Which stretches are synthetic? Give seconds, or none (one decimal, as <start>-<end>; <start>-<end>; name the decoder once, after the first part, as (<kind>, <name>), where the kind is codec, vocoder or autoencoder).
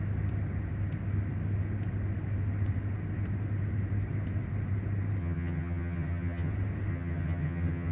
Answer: 5.2-6.5 (vocoder, HiFi-GAN); 6.9-7.9